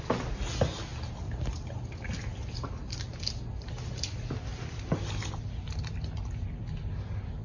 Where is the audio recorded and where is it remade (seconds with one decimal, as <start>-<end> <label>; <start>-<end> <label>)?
0.0-7.4 recorded